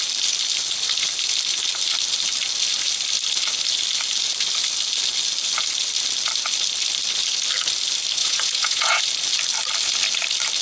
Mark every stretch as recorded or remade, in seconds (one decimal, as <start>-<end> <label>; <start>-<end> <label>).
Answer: 0.0-8.2 recorded; 8.2-9.0 remade; 9.0-10.6 recorded